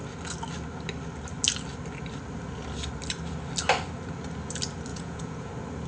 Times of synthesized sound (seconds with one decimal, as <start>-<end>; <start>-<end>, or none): 4.9-5.5